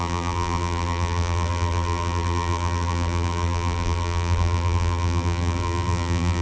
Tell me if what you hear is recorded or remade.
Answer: remade